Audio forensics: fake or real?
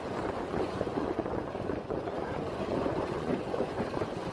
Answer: fake